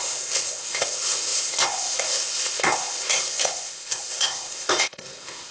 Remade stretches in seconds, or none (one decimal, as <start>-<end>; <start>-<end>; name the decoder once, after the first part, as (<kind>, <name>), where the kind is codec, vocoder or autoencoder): 0.0-5.5 (codec, ZipCodec)